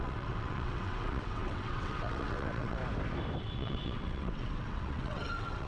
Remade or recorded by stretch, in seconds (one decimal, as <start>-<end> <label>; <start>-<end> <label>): 0.0-2.8 remade; 2.8-3.4 recorded; 3.4-5.7 remade